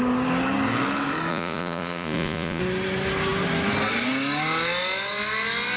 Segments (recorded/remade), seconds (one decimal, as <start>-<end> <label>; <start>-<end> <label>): 0.0-1.3 recorded; 1.3-2.6 remade; 2.6-5.8 recorded